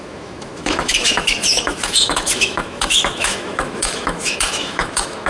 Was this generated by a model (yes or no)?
yes